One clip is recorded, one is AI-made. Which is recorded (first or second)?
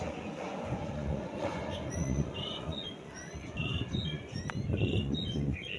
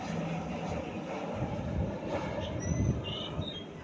second